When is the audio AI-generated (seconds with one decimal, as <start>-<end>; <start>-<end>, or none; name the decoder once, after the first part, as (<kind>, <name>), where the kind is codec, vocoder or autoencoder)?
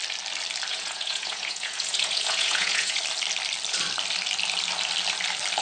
0.7-3.0 (vocoder, Vocos)